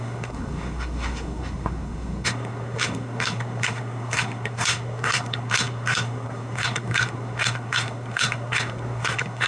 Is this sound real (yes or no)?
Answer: no